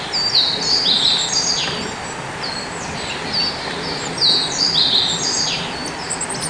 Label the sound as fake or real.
real